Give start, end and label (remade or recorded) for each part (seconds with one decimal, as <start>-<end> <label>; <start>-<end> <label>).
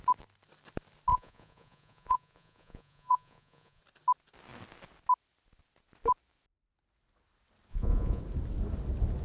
0.0-1.1 recorded; 1.1-3.8 remade; 3.8-7.7 recorded; 7.7-8.2 remade; 8.2-9.2 recorded